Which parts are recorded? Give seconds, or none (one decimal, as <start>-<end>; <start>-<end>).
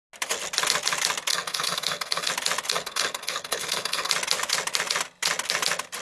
0.0-1.3; 2.3-2.7; 4.1-6.0